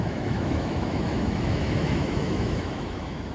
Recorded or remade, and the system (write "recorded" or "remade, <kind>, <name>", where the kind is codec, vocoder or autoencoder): remade, autoencoder, DAC-VAE